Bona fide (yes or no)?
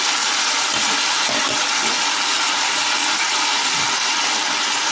yes